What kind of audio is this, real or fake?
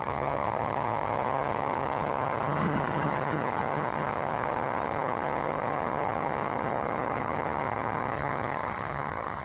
fake